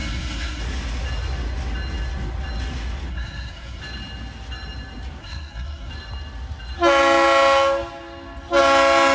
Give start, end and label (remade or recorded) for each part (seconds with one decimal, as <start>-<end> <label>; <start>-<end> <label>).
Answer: 0.0-0.6 remade; 0.6-3.1 recorded; 3.1-3.8 remade; 3.8-5.2 recorded; 5.2-5.9 remade; 5.9-9.1 recorded